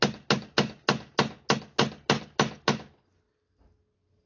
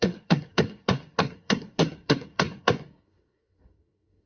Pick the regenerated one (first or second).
second